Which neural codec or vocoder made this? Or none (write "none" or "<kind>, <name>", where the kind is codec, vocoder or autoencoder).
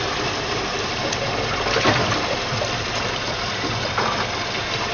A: none